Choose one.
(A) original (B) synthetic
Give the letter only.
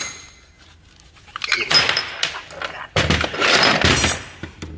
A